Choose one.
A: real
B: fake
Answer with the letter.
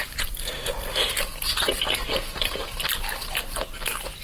A